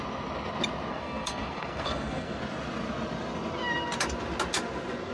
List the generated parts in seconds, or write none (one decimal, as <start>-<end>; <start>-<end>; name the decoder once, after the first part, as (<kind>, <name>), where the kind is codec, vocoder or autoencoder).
0.9-2.4 (codec, SNAC)

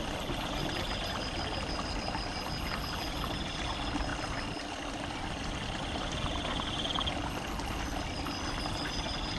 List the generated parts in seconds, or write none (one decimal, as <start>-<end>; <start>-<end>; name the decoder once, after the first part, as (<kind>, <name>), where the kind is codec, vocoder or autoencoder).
none

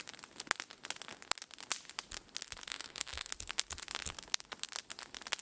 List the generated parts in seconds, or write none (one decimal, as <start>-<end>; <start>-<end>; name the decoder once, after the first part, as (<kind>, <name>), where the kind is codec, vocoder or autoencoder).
2.7-3.3 (codec, SNAC)

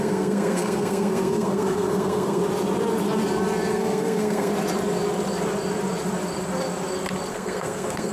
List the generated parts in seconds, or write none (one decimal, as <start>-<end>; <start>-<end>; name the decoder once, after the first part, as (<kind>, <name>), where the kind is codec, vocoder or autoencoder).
0.0-2.4 (codec, SNAC); 3.7-4.5; 7.3-8.1

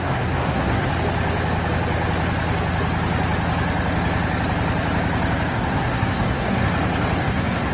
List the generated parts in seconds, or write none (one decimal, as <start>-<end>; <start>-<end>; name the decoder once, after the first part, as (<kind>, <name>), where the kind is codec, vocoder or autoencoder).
0.0-0.9 (codec, SNAC); 5.5-6.7; 7.2-7.7

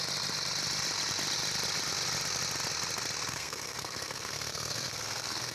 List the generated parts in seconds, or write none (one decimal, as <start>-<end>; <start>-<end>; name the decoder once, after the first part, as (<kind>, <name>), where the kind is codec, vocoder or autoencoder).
3.3-5.5 (codec, SNAC)

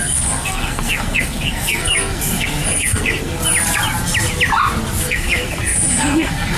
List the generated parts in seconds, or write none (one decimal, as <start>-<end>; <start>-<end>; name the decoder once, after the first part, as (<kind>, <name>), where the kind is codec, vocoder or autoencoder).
0.0-3.4 (codec, SNAC); 5.0-6.6

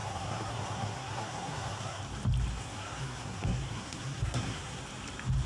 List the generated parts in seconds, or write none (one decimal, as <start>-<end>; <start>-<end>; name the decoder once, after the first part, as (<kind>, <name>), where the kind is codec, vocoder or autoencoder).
0.0-2.0 (codec, SNAC); 2.5-4.8